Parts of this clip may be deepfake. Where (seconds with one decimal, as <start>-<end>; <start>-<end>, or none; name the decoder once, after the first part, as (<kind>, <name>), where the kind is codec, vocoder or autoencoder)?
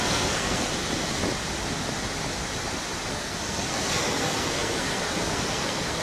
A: 0.0-0.7 (codec, SNAC); 3.1-6.0